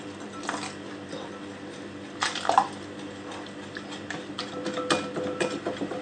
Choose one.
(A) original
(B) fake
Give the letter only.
A